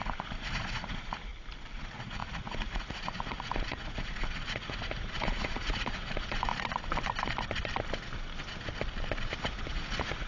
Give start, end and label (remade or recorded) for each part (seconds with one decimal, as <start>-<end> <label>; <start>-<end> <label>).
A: 0.0-1.3 remade; 1.3-1.8 recorded; 1.8-6.5 remade; 6.5-9.4 recorded; 9.4-10.3 remade